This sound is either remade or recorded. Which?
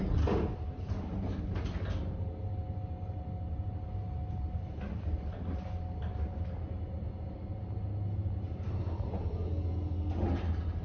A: recorded